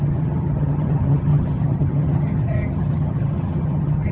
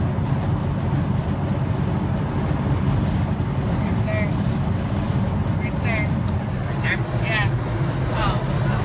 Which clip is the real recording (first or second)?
second